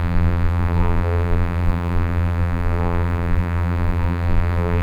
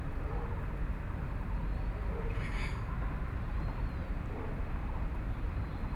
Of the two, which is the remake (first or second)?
first